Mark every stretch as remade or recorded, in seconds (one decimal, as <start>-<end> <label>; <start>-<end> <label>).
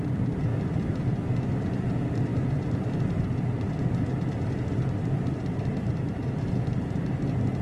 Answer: 0.0-7.6 recorded